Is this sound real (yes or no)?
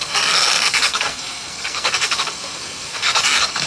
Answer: no